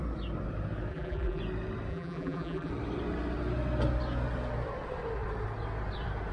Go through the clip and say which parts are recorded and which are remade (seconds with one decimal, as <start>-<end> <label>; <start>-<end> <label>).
0.0-0.9 recorded; 0.9-1.4 remade; 1.4-1.9 recorded; 1.9-2.7 remade; 2.7-6.3 recorded